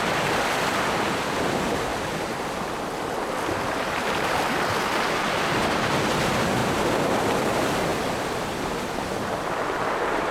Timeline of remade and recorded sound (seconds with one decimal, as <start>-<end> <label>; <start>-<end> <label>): 0.0-6.6 recorded; 6.6-7.3 remade; 7.3-10.3 recorded